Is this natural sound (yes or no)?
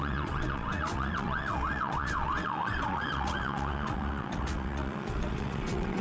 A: no